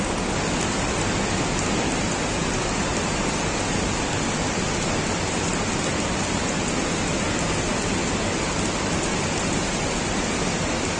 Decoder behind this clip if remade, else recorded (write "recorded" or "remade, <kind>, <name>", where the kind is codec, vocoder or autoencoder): recorded